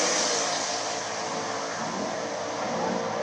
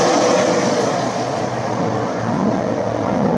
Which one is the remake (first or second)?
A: second